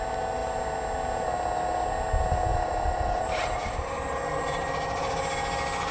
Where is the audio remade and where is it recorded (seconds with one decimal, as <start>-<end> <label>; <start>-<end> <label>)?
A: 0.0-2.5 recorded; 2.5-5.2 remade; 5.2-5.9 recorded